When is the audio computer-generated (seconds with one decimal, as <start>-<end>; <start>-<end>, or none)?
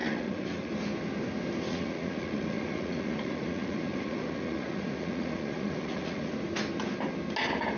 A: 0.0-0.7; 1.7-6.3